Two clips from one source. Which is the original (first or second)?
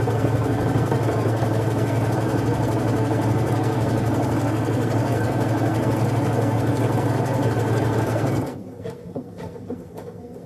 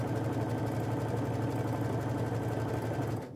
second